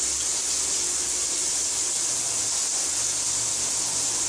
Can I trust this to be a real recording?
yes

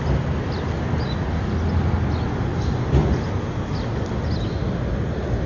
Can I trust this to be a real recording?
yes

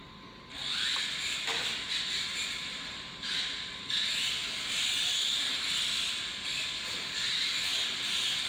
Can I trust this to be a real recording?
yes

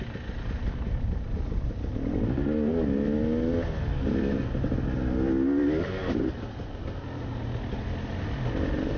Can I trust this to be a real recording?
yes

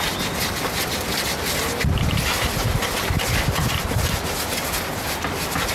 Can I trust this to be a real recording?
yes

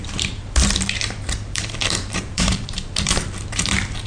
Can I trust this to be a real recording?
no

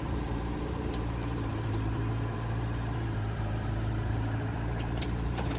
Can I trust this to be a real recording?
no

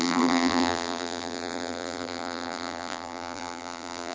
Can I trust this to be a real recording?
no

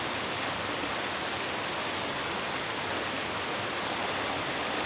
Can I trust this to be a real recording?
yes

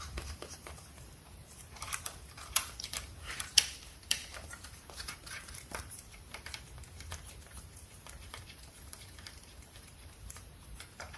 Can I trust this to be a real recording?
no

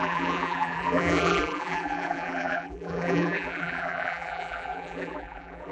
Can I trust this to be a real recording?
no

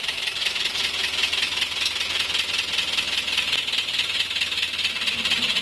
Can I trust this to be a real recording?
yes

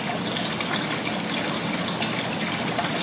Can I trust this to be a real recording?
yes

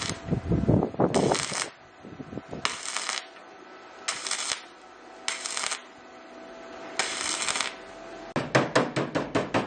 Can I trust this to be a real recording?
yes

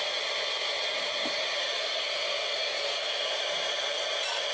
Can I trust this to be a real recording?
yes